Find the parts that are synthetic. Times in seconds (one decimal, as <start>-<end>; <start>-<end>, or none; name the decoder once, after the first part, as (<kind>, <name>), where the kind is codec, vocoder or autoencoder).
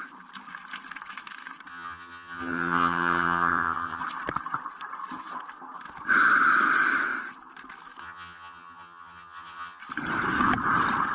1.7-4.0 (vocoder, HiFi-GAN); 8.0-9.8